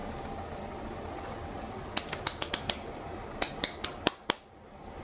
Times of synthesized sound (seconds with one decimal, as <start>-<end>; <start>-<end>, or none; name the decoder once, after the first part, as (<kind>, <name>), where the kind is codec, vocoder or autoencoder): 2.5-5.0 (vocoder, BigVGAN v2)